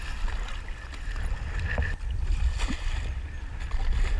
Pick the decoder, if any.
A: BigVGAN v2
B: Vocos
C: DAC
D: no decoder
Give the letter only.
D